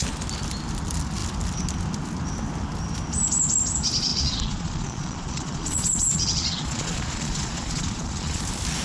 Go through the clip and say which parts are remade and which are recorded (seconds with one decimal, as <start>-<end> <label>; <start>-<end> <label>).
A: 0.0-4.1 recorded; 4.1-8.4 remade; 8.4-8.8 recorded